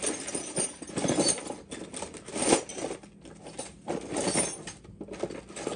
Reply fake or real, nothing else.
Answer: real